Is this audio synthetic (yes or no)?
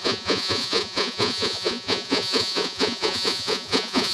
yes